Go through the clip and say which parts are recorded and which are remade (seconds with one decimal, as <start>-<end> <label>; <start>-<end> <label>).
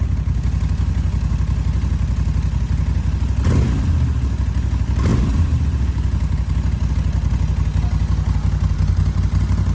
0.0-9.7 recorded